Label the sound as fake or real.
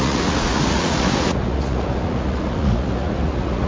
fake